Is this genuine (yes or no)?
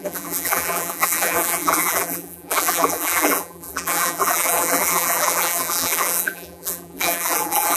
no